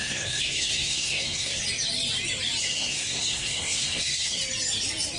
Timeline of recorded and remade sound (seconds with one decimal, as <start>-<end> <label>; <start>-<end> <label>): 0.0-1.6 remade; 1.6-2.6 recorded; 2.6-4.4 remade; 4.4-5.2 recorded